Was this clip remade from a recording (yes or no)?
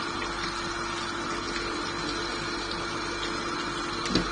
no